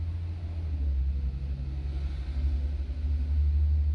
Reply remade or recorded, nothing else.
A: recorded